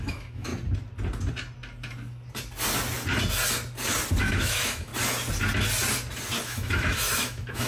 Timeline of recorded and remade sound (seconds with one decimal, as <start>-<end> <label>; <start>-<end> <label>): 0.0-0.5 remade; 0.5-4.2 recorded; 4.2-4.9 remade; 4.9-6.4 recorded; 6.4-7.7 remade